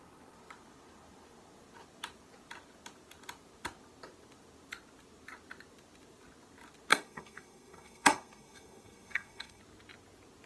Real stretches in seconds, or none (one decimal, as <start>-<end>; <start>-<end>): 0.0-6.9; 9.6-10.5